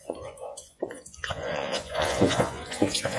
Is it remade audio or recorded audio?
remade